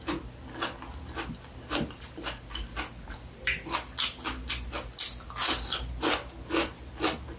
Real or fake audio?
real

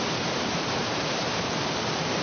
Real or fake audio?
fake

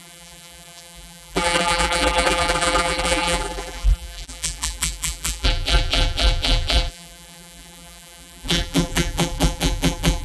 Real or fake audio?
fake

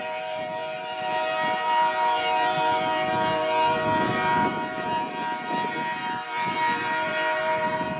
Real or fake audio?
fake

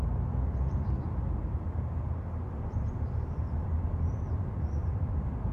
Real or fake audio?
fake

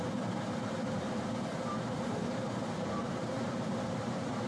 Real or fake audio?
fake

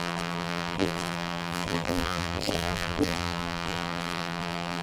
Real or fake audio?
fake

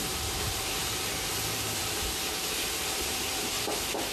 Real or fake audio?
fake